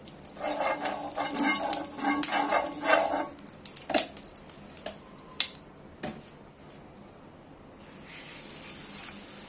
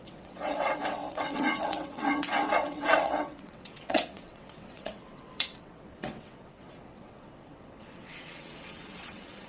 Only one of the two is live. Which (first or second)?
first